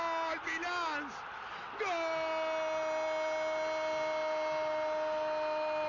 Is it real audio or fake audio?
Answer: real